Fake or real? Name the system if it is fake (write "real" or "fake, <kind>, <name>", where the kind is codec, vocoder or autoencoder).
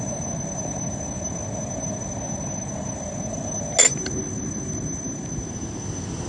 real